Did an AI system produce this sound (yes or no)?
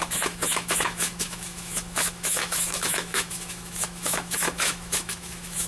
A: yes